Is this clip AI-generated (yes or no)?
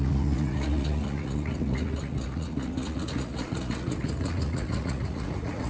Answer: yes